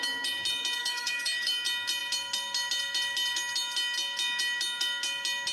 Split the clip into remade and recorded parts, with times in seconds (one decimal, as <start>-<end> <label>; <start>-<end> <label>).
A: 0.0-0.8 recorded; 0.8-1.5 remade; 1.5-5.5 recorded